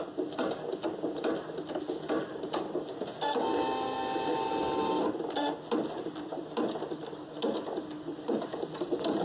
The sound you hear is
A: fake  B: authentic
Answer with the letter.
B